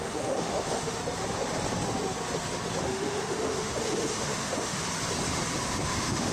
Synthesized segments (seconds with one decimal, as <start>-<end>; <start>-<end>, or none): 0.0-1.0; 2.8-4.8; 5.8-6.3